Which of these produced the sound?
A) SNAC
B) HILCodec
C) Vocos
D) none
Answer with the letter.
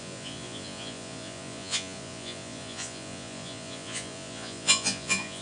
C